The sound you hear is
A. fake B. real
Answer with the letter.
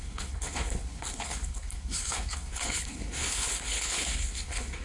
A